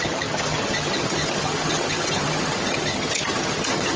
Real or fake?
fake